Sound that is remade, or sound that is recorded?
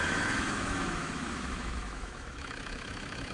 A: remade